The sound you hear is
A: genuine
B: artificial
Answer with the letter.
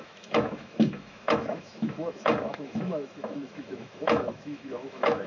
B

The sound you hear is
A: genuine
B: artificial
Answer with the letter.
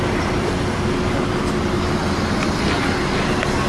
A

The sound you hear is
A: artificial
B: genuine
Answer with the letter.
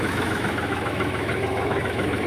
A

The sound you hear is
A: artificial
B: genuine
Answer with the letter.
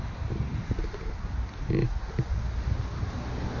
B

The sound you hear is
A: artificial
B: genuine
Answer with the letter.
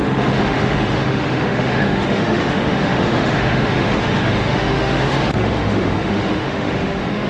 A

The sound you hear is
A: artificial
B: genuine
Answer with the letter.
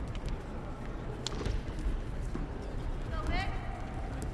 B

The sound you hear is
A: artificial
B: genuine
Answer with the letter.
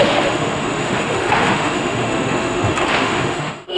A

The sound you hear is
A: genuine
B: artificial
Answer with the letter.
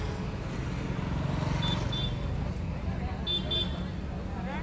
A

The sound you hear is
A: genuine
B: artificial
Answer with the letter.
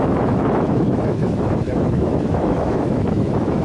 B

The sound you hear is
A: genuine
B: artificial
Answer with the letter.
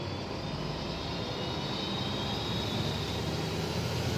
A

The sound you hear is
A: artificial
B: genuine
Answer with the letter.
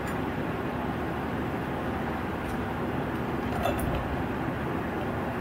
B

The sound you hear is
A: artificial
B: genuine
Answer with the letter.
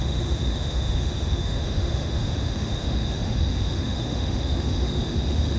A